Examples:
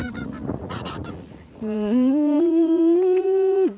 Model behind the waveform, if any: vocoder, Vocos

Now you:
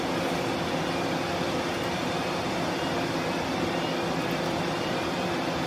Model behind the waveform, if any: none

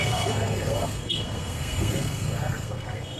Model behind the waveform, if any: codec, SNAC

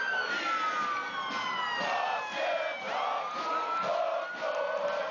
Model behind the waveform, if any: none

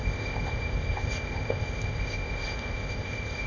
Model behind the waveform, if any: codec, ZipCodec